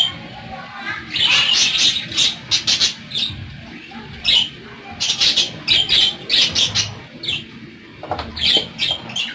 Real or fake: real